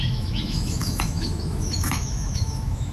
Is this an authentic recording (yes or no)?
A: no